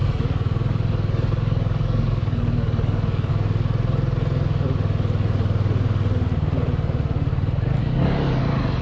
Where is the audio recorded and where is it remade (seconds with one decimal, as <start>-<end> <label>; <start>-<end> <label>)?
0.0-3.3 remade; 3.3-7.8 recorded; 7.8-8.4 remade; 8.4-8.8 recorded